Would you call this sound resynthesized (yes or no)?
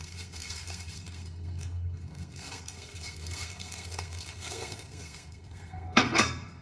yes